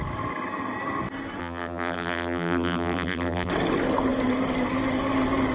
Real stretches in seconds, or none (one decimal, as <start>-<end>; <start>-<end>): 0.0-1.4; 3.5-5.5